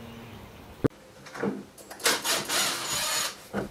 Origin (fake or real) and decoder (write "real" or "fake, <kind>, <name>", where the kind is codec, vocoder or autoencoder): real